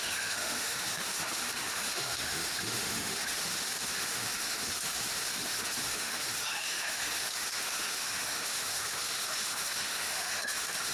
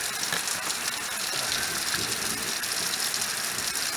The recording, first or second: second